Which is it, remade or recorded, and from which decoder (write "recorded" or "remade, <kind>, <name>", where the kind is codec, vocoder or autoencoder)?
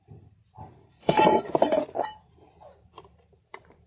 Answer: remade, vocoder, BigVGAN v2